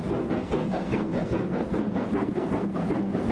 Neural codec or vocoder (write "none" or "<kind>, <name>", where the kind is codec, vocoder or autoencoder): codec, SNAC